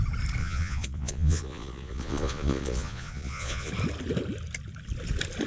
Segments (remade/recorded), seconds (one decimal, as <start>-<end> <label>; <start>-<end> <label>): 0.0-0.4 recorded; 0.4-3.7 remade; 3.7-5.5 recorded